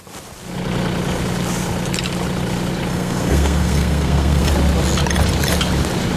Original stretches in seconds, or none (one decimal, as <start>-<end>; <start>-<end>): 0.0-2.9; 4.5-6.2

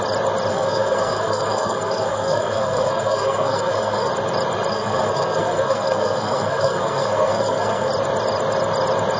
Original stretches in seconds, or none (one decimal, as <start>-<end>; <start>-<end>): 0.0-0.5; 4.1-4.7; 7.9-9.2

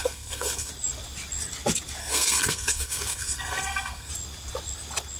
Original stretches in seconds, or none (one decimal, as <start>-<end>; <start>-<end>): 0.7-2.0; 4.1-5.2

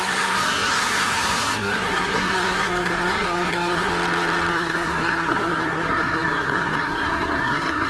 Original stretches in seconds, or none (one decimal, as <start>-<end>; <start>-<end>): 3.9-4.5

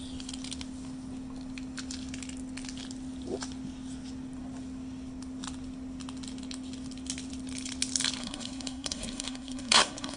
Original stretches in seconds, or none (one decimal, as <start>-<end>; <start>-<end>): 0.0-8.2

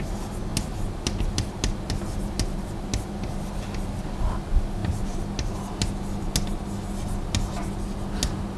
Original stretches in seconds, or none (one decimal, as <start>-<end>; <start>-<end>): 0.0-8.6

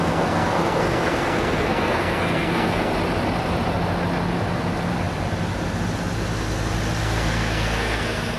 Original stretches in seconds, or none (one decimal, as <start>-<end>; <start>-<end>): 2.9-7.0